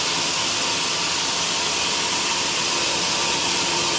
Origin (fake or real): real